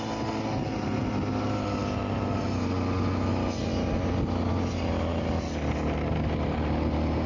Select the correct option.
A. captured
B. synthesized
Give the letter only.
A